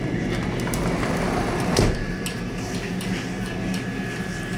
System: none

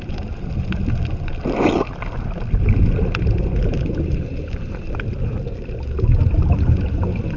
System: none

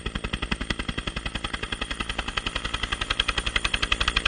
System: none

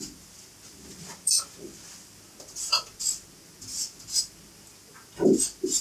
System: none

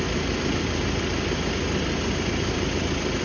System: none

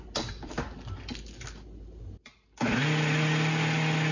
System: none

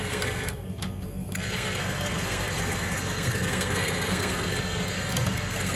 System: codec, SNAC